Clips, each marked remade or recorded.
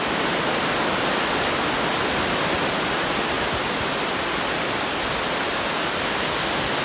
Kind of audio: recorded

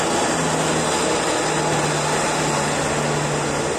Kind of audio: recorded